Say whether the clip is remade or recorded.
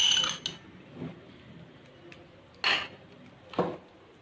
recorded